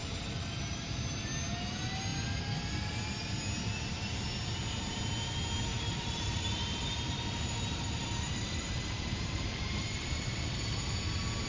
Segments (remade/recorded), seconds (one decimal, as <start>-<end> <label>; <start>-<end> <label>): 0.0-1.1 remade; 1.1-5.7 recorded; 5.7-10.9 remade; 10.9-11.5 recorded